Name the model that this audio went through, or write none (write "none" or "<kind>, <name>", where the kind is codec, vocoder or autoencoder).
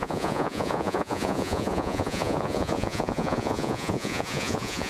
vocoder, Vocos